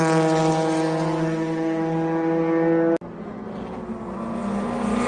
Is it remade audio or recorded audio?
recorded